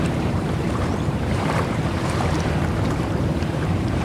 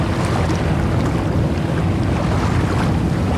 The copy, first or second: first